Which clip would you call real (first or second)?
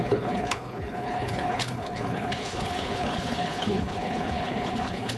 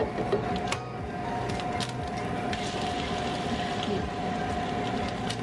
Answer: second